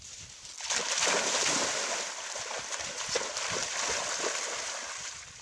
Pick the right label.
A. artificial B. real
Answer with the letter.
B